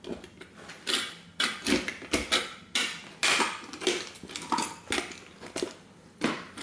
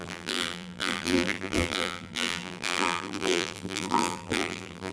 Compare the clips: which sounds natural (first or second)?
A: first